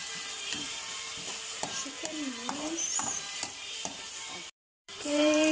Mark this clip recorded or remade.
remade